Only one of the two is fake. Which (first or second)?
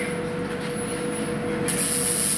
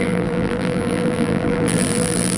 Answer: second